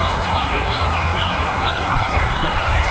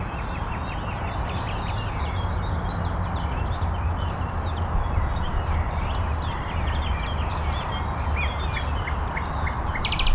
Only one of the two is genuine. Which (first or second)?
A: second